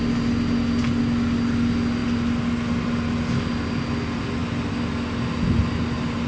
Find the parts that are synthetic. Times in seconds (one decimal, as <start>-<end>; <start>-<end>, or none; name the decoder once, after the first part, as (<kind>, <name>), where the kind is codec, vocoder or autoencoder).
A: none

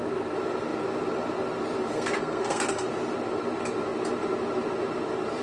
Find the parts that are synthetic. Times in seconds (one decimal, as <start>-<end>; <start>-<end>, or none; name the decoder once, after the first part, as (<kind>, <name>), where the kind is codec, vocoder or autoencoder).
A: 1.9-2.9 (codec, SNAC)

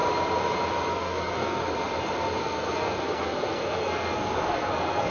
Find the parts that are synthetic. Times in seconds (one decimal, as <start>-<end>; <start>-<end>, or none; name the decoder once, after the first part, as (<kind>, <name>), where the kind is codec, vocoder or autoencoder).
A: 0.9-1.6 (codec, SNAC); 2.4-5.1

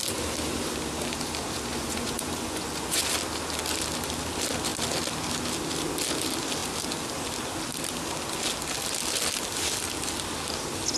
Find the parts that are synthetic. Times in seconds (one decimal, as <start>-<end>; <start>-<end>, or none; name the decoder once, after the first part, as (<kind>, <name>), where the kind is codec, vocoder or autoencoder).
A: 1.7-3.0 (vocoder, Vocos)

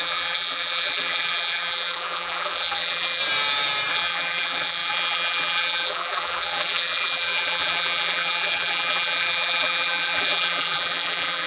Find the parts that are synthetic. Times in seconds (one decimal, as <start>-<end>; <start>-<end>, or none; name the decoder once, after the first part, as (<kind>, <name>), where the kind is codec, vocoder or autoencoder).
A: 0.0-3.2 (vocoder, BigVGAN v2); 3.9-11.5

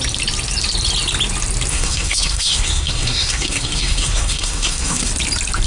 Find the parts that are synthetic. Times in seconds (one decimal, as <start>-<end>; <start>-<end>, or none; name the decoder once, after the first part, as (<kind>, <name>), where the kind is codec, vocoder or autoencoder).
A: 1.7-5.1 (codec, SNAC)